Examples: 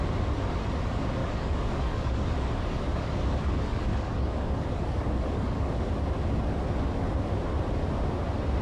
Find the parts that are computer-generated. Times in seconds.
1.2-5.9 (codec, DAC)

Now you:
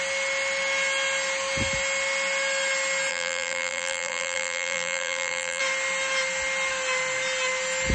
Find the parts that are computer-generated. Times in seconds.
3.1-5.6 (vocoder, BigVGAN v2)

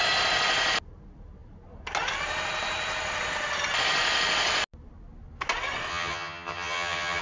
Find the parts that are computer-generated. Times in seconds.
5.9-7.2 (vocoder, HiFi-GAN)

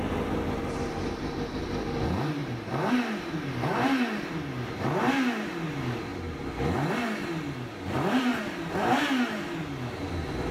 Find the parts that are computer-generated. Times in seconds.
2.4-4.3 (vocoder, BigVGAN v2)

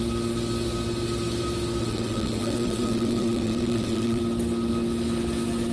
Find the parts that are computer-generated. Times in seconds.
1.8-4.2 (vocoder, WaveNeXt)

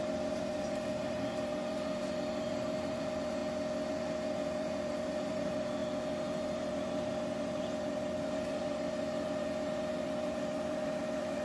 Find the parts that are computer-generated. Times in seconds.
0.0-3.4 (vocoder, BigVGAN v2); 3.9-11.4